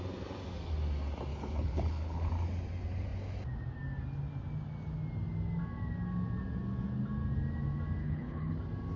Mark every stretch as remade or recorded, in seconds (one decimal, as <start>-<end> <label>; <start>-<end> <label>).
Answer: 0.0-1.3 recorded; 1.3-2.3 remade; 2.3-8.0 recorded; 8.0-8.6 remade; 8.6-9.0 recorded